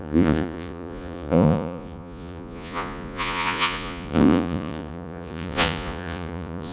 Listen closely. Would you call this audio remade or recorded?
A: remade